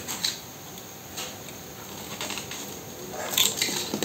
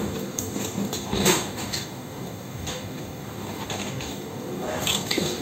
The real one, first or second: first